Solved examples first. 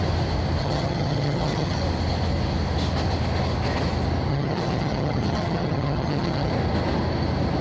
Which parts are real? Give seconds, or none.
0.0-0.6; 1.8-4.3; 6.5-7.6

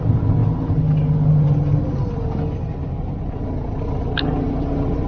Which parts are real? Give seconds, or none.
0.0-5.1

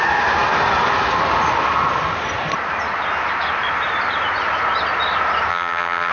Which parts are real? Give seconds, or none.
0.0-5.5